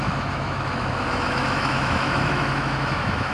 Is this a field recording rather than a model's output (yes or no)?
no